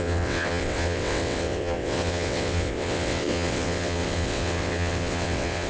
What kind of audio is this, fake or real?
fake